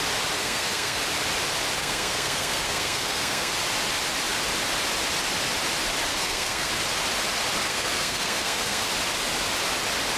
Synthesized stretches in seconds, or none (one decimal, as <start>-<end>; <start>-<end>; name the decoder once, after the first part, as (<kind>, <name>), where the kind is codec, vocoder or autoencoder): 0.4-1.0 (codec, SNAC); 1.8-3.5; 6.1-6.7; 7.7-8.9